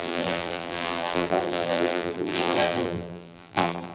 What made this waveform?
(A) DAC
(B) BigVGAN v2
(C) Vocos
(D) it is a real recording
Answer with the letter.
B